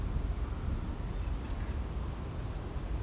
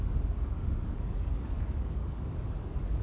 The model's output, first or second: second